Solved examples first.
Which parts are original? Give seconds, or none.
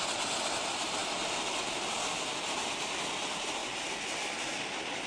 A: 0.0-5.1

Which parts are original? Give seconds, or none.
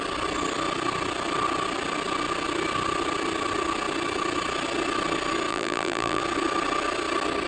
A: 0.0-5.5; 6.2-7.5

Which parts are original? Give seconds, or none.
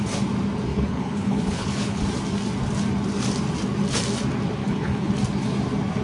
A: 0.0-0.7; 2.0-4.6; 5.1-6.0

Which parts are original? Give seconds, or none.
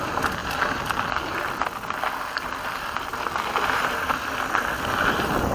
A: 0.0-5.5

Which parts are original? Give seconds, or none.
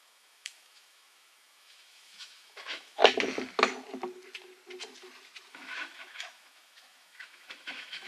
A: 3.0-5.5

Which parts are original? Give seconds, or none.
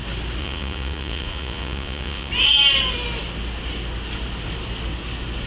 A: 0.0-0.4; 2.3-5.5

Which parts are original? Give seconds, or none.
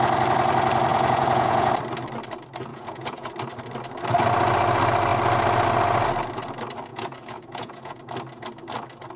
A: 0.0-0.9; 1.7-2.7; 3.3-6.9; 8.0-9.2